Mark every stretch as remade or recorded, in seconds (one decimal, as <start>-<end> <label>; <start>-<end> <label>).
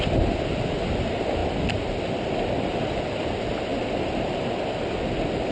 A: 0.0-5.5 recorded